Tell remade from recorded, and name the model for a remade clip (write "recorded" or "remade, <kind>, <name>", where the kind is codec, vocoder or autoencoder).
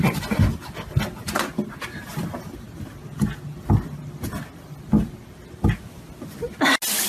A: recorded